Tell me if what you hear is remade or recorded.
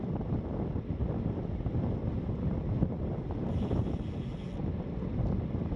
recorded